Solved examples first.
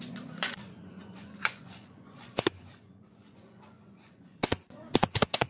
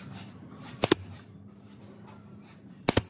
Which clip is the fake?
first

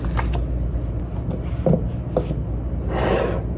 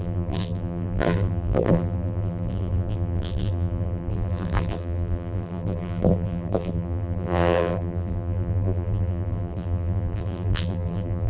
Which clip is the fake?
second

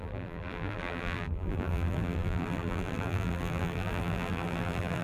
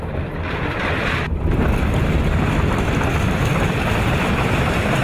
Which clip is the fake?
first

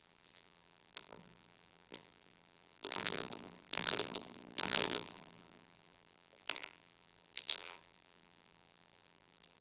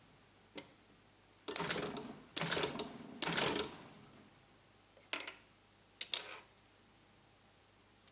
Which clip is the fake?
first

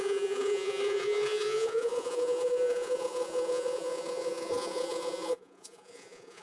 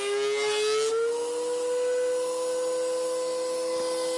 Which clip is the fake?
first